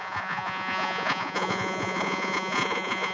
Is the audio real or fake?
fake